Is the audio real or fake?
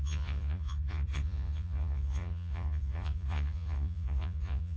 fake